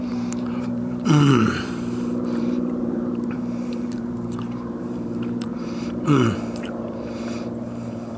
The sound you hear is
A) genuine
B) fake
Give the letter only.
B